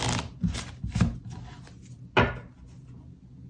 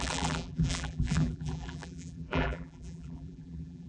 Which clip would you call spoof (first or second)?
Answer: second